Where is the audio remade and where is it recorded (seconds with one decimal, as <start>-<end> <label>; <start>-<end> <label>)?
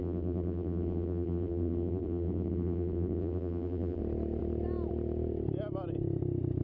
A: 0.0-4.0 remade; 4.0-6.6 recorded